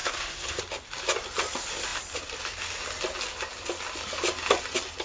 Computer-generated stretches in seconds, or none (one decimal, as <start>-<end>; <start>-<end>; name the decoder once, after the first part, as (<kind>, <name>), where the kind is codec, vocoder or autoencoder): 0.0-0.6 (codec, SNAC)